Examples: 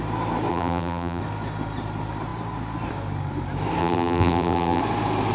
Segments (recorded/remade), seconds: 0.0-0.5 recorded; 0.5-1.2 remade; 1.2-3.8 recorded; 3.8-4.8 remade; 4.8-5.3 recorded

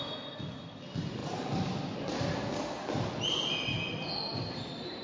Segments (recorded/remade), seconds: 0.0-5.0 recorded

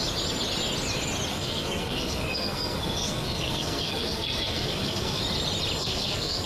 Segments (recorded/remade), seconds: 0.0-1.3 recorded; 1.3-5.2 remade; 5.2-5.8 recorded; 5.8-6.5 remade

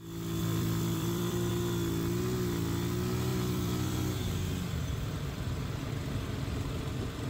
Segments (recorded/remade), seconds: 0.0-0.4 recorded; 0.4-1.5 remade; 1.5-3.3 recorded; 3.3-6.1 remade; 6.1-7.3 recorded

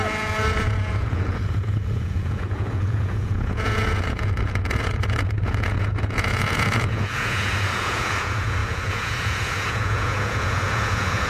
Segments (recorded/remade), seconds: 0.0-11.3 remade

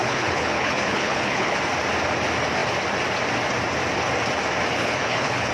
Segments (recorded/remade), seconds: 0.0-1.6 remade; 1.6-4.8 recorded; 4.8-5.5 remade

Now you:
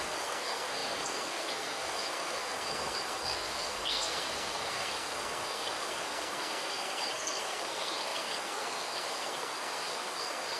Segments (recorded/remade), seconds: 0.0-10.6 remade

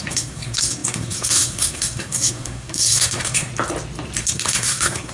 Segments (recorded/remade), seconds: 0.0-3.5 remade; 3.5-4.2 recorded; 4.2-5.1 remade